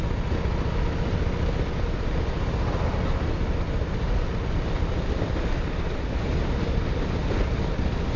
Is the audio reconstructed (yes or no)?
no